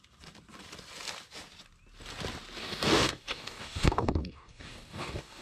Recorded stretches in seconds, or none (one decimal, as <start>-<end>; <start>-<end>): 0.0-2.6